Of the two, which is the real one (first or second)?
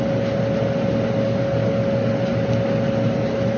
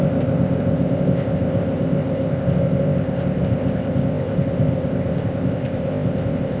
first